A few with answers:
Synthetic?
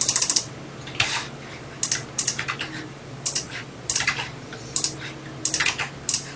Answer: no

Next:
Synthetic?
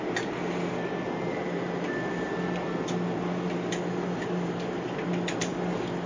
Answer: no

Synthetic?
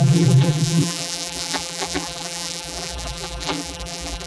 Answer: yes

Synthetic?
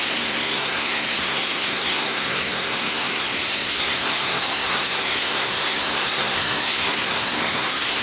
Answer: yes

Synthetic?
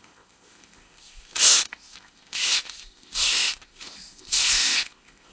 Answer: yes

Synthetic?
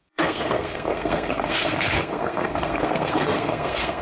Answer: yes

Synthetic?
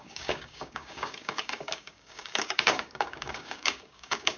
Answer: yes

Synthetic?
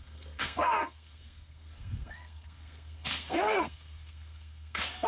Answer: yes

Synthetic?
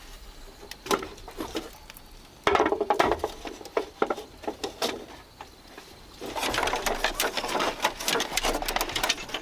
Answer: no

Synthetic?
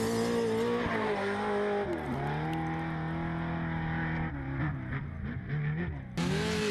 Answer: no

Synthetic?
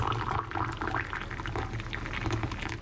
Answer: no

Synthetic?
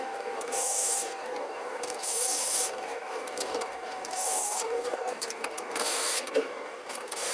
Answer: yes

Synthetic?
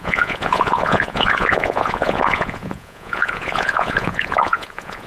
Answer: yes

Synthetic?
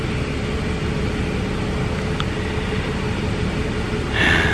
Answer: no